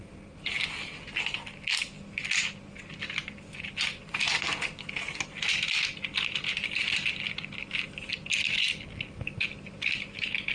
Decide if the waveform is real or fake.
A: real